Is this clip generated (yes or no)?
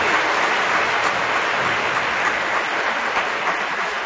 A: no